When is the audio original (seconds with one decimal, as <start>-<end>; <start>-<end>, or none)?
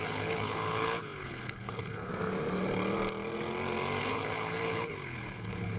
2.1-4.0